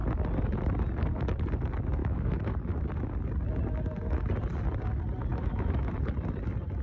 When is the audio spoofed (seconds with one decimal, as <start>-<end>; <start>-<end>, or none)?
2.0-2.6; 5.3-5.9